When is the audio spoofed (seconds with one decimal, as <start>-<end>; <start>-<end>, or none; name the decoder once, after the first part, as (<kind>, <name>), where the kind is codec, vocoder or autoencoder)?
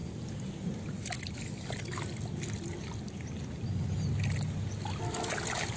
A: none